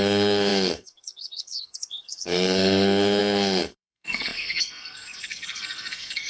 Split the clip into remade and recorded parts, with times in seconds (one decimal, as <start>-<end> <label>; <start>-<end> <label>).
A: 0.0-6.3 remade